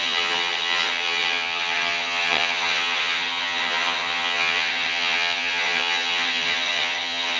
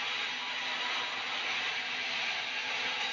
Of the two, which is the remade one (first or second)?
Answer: first